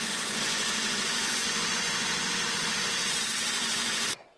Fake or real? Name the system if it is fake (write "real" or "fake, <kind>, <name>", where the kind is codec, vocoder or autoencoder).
fake, vocoder, Vocos